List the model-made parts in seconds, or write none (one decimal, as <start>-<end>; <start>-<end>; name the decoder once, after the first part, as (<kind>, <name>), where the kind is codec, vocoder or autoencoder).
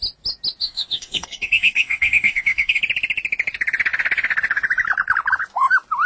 0.6-2.8 (codec, DAC)